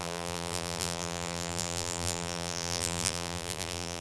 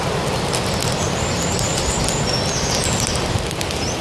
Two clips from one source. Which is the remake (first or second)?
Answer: first